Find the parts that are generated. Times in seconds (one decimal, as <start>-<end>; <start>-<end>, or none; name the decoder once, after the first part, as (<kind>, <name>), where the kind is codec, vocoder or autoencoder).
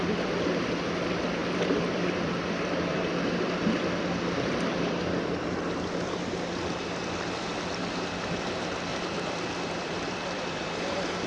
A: 1.4-2.7 (vocoder, BigVGAN v2); 8.9-11.3